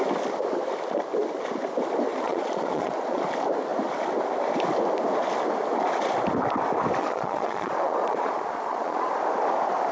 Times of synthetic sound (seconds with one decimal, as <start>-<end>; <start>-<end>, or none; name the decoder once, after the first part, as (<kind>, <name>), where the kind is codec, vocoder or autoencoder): 2.1-3.2 (vocoder, Vocos); 7.0-9.2